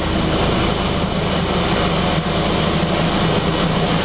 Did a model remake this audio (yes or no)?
no